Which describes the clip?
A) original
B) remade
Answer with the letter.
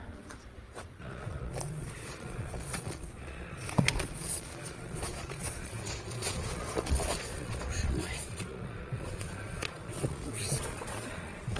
B